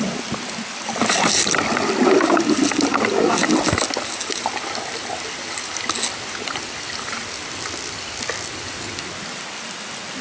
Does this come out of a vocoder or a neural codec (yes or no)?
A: no